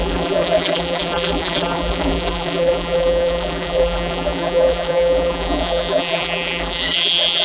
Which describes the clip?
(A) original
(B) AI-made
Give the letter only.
B